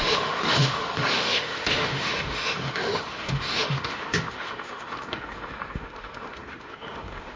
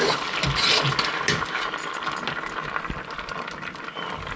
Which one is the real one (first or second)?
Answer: second